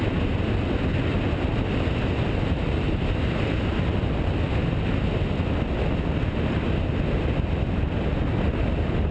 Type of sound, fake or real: real